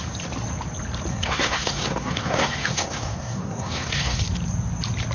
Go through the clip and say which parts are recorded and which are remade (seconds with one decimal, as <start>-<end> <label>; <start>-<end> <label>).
0.0-1.1 recorded; 1.1-4.2 remade; 4.2-5.1 recorded